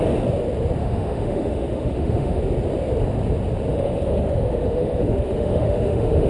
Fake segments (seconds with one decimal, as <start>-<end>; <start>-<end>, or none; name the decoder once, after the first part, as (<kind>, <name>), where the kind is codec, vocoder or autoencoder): 0.8-2.4 (autoencoder, DAC-VAE); 3.7-6.3